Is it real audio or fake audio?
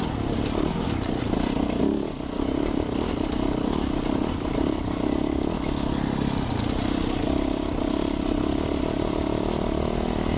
real